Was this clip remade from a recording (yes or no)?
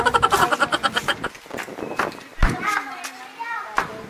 no